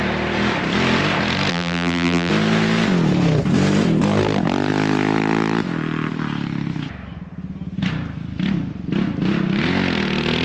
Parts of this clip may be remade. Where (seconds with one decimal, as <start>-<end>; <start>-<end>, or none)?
1.5-2.3